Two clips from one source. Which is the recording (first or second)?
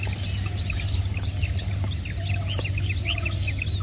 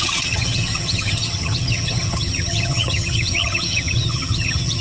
first